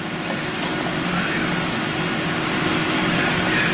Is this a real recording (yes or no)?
yes